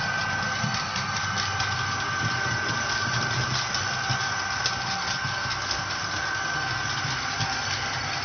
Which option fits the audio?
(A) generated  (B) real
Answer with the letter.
B